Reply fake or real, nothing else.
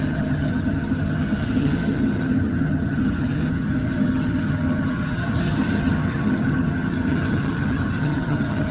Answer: fake